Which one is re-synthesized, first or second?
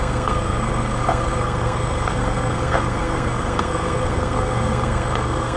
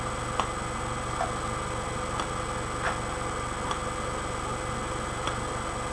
first